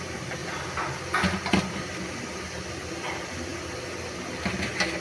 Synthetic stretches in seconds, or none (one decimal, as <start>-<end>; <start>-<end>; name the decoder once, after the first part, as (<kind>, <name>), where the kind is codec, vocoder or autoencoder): none